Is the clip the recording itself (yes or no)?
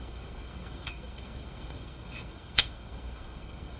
no